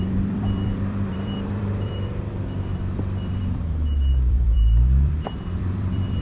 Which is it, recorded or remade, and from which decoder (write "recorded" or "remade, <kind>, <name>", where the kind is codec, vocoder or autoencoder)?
remade, vocoder, BigVGAN v2